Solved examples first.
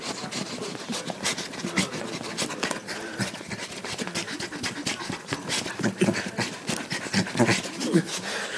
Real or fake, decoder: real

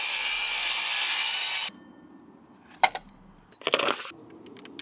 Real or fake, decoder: real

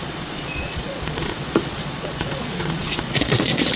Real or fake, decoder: fake, vocoder, Vocos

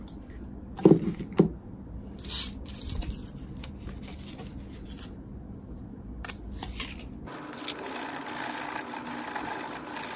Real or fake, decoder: real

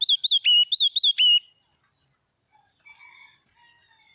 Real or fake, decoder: real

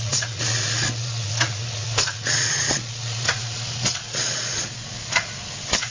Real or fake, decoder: fake, vocoder, Vocos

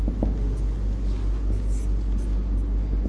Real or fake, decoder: real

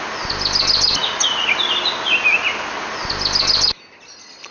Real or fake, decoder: real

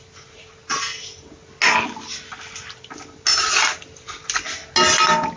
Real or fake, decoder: real